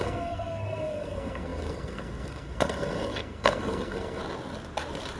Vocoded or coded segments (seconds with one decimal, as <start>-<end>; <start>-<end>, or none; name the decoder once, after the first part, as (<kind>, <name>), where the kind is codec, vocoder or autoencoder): 0.0-4.2 (codec, SNAC)